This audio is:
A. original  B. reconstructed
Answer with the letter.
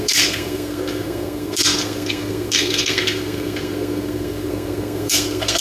B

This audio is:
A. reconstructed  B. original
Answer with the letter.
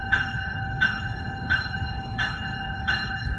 A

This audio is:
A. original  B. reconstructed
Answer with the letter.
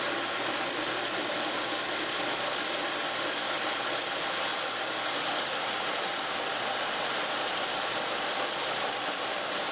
A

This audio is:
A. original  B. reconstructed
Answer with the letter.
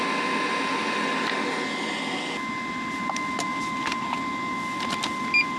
A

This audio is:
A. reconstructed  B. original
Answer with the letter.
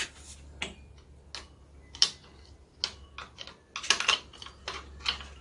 B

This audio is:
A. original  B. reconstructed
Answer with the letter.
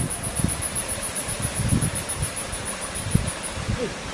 A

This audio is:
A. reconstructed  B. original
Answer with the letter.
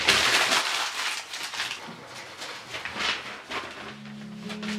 B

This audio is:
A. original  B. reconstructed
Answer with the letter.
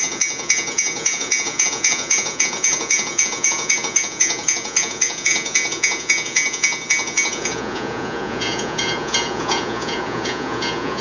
B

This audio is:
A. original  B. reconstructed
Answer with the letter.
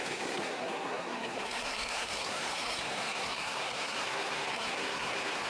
B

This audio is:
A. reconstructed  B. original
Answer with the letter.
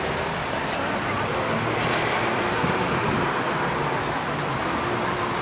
B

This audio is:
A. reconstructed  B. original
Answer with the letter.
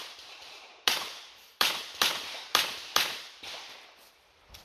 A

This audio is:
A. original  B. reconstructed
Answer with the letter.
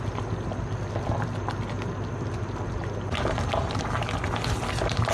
A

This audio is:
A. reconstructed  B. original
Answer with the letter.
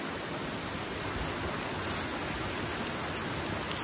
B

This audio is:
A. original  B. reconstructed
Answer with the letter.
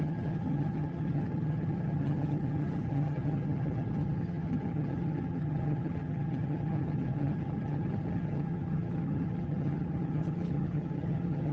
B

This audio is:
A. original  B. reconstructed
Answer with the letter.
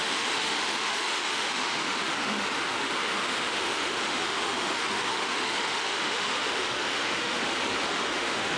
B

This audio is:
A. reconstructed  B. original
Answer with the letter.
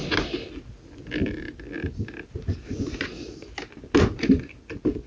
B